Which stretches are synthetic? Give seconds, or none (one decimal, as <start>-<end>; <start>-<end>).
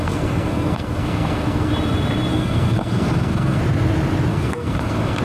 0.0-1.7; 2.3-3.6; 4.3-5.2